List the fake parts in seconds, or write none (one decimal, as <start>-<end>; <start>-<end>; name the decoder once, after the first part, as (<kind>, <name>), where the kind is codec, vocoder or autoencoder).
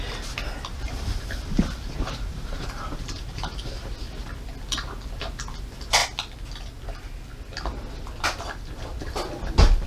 0.7-3.9 (vocoder, BigVGAN v2)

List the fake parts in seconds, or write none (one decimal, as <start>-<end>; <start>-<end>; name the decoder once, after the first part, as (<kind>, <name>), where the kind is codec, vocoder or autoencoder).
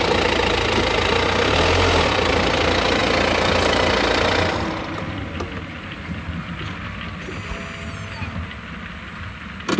none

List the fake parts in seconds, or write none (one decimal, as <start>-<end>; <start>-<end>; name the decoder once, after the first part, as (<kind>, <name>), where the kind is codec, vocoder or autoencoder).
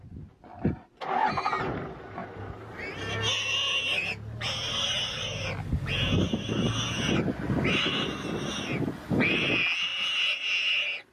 none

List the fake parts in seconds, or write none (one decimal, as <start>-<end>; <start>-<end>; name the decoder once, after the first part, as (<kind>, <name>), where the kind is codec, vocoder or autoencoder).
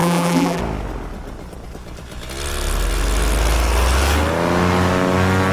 0.0-0.6 (vocoder, BigVGAN v2)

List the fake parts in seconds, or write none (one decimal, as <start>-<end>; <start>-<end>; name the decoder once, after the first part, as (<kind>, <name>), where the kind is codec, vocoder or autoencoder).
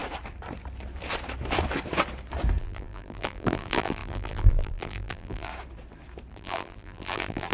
2.6-5.5 (vocoder, BigVGAN v2); 6.3-7.5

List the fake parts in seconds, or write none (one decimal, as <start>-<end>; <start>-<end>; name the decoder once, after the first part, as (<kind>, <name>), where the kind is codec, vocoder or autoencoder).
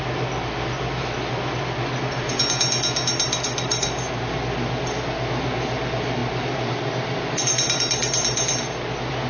none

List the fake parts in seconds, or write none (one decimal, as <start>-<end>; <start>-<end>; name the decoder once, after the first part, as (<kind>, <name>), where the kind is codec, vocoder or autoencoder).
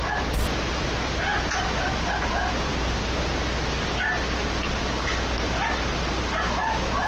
none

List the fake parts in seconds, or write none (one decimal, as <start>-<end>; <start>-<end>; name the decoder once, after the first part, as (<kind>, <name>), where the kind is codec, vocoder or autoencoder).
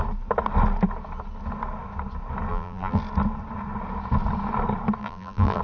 2.5-3.0 (vocoder, BigVGAN v2); 5.0-5.6